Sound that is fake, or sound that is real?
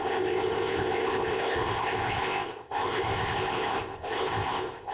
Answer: fake